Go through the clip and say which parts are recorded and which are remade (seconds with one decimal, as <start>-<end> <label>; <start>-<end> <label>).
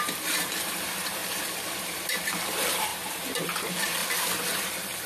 0.0-4.0 remade; 4.0-4.6 recorded; 4.6-5.1 remade